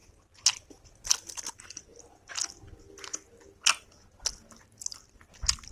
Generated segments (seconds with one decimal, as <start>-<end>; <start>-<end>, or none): none